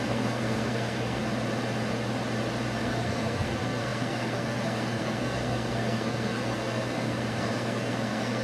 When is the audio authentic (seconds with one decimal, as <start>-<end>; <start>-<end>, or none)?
1.2-2.8